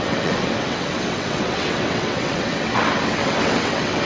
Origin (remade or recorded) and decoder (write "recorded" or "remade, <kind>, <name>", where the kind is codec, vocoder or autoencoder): remade, vocoder, WaveNeXt